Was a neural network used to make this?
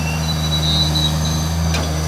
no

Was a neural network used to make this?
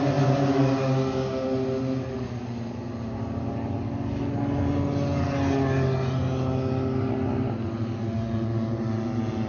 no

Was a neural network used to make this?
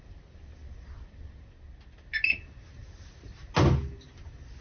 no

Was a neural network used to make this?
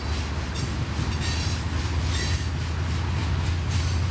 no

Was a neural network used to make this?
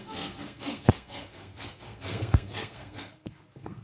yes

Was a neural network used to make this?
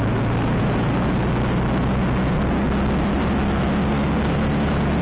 no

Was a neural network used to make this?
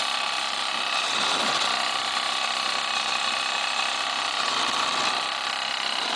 no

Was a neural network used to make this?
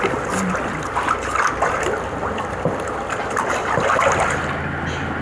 no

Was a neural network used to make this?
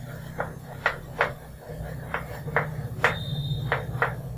no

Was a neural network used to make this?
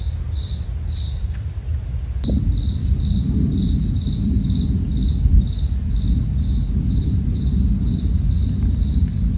no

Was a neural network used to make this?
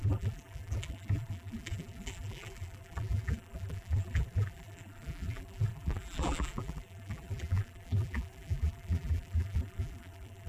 yes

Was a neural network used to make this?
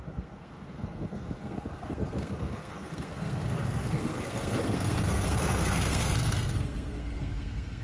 yes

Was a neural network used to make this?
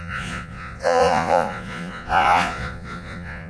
yes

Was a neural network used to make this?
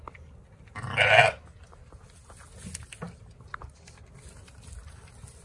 no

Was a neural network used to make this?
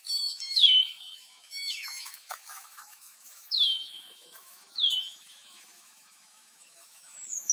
yes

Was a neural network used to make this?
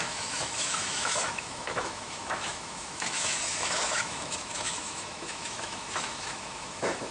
yes